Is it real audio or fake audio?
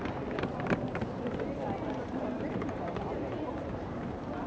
fake